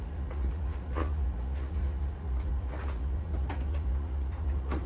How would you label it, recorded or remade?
remade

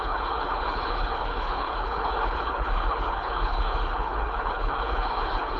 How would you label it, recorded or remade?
remade